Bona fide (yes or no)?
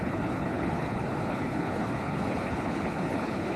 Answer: no